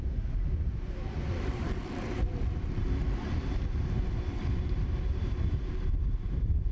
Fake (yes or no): yes